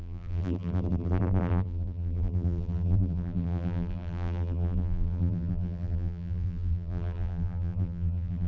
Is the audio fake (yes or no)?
yes